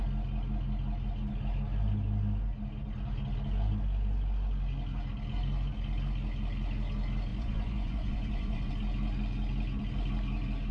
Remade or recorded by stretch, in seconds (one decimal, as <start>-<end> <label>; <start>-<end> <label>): 0.0-7.3 recorded; 7.3-8.7 remade; 8.7-10.7 recorded